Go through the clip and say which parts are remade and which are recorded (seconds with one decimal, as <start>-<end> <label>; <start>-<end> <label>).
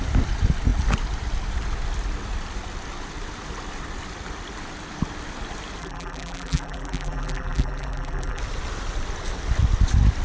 0.0-5.8 recorded; 5.8-8.4 remade; 8.4-10.2 recorded